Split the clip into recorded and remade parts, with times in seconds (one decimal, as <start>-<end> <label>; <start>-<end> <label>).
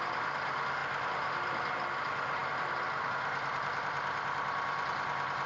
0.0-5.5 recorded